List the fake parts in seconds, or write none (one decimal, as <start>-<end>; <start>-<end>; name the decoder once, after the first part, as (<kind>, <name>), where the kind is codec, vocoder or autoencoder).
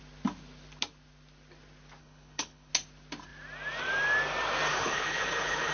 2.0-2.7 (codec, HILCodec); 4.7-5.7